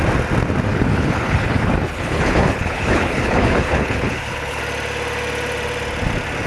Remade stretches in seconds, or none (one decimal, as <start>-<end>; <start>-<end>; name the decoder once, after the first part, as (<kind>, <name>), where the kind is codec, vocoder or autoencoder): 0.7-4.6 (codec, HILCodec)